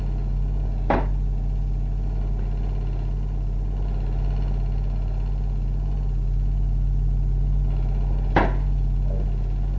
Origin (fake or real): real